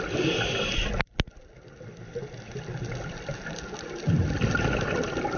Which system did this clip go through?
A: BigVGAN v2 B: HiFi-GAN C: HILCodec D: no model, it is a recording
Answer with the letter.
D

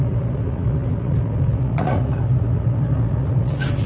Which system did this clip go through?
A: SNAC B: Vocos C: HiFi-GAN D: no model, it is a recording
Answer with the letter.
B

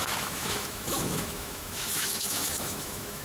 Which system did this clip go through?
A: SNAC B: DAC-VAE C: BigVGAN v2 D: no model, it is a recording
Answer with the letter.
B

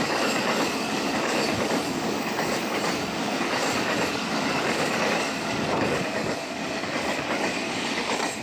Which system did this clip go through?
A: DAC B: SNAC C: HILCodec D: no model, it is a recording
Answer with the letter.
A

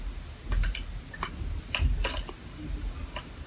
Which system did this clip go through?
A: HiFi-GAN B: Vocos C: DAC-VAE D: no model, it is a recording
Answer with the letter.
D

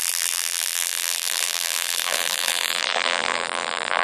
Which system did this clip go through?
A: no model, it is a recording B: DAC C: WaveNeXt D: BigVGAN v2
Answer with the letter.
D